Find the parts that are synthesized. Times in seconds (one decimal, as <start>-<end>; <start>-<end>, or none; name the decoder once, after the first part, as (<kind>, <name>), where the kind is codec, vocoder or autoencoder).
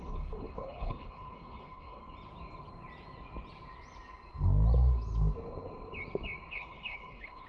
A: 0.0-2.0 (codec, HILCodec); 6.5-7.5